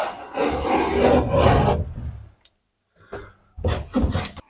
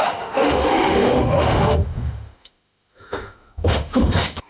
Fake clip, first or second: second